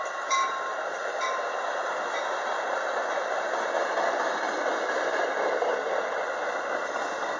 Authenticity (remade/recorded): recorded